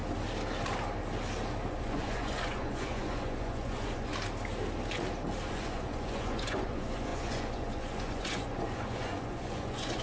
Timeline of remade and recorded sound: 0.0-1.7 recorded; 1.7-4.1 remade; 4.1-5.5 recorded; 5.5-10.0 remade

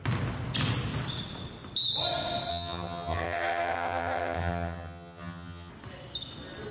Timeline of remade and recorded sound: 0.0-2.5 recorded; 2.5-5.7 remade; 5.7-6.7 recorded

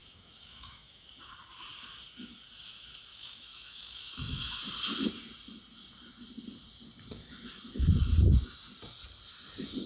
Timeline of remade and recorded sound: 0.0-1.1 remade; 1.1-3.1 recorded; 3.1-4.6 remade; 4.6-9.9 recorded

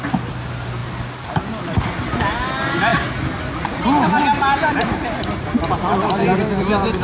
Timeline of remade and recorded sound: 0.0-7.0 recorded

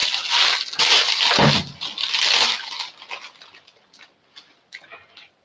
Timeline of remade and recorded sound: 0.0-5.4 recorded

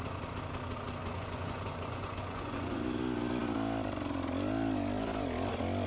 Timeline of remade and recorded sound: 0.0-1.0 recorded; 1.0-2.8 remade; 2.8-5.9 recorded

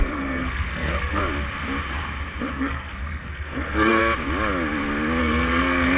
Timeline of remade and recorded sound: 0.0-1.2 remade; 1.2-2.5 recorded; 2.5-4.0 remade; 4.0-5.2 recorded; 5.2-6.0 remade

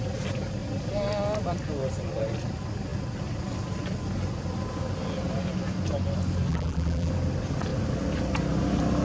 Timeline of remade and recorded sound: 0.0-6.5 recorded; 6.5-7.1 remade; 7.1-9.0 recorded